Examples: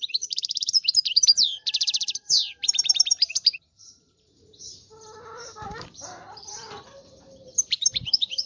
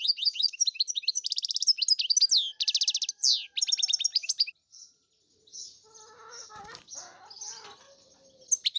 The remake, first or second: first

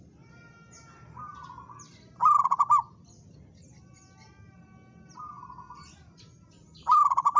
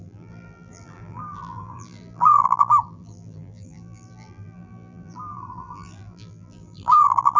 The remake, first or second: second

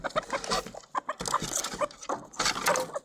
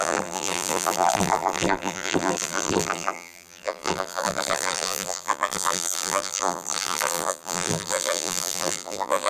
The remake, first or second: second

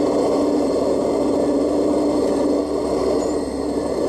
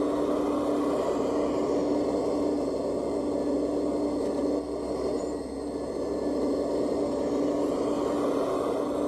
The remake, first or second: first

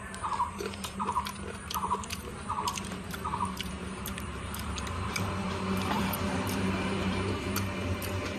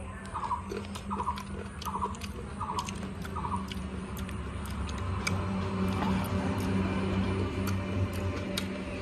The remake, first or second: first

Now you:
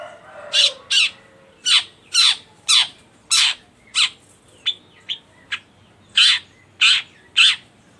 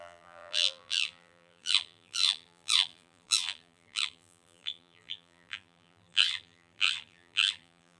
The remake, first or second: second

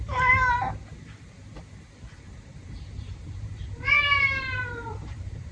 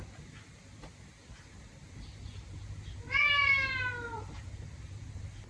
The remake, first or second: first